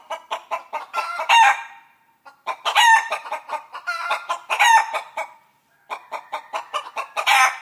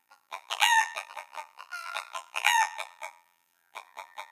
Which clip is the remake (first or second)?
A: second